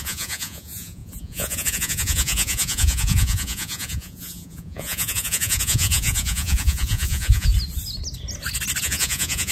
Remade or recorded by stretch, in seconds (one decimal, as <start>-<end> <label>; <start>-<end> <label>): 0.0-7.5 remade; 7.5-8.8 recorded; 8.8-9.5 remade